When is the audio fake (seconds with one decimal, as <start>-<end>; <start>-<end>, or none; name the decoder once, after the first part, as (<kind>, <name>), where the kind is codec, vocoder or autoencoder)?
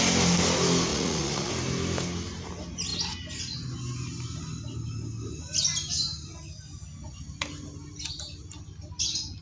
0.9-1.5 (vocoder, Vocos)